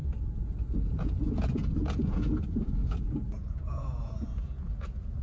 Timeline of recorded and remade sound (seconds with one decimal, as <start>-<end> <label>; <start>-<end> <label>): 0.0-5.2 remade